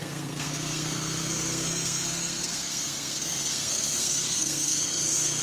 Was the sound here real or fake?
fake